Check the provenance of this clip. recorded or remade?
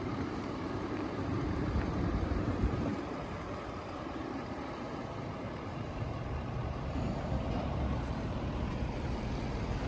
remade